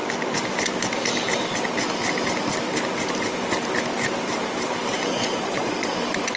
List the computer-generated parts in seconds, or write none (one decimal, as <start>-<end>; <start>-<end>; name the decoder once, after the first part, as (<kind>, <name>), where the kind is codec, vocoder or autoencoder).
5.1-5.9 (vocoder, Vocos)